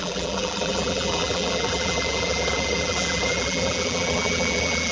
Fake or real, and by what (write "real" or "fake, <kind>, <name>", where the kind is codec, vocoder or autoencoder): fake, vocoder, BigVGAN v2